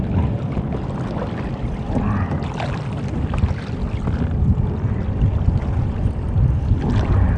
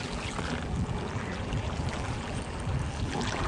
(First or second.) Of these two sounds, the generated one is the second